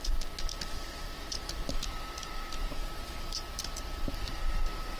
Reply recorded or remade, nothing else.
remade